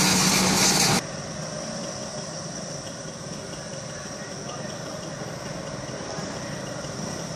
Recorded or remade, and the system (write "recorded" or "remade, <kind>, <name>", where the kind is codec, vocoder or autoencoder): recorded